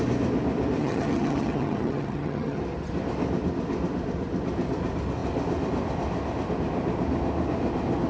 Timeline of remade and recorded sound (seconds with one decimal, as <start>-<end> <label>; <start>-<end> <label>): 0.0-0.8 recorded; 0.8-2.6 remade; 2.6-8.1 recorded